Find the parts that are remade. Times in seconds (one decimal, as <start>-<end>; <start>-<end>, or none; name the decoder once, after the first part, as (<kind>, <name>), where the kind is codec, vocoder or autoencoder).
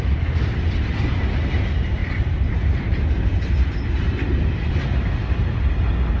none